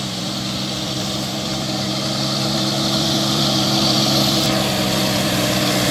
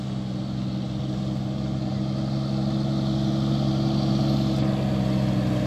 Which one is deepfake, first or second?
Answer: first